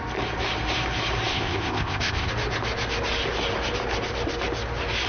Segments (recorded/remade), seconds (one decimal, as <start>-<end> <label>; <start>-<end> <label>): 0.0-1.3 recorded; 1.3-2.3 remade; 2.3-5.1 recorded